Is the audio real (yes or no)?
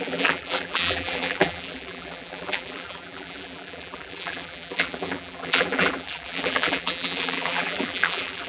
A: no